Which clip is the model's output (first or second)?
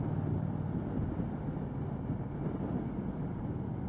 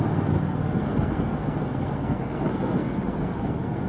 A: second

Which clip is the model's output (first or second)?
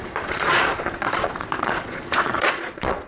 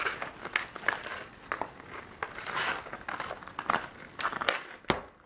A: first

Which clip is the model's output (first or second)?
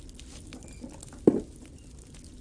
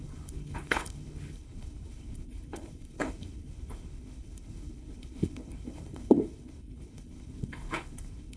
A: second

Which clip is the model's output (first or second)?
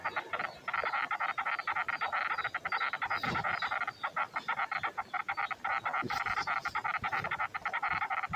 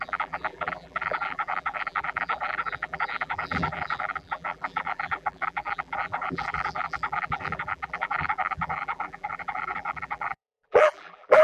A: second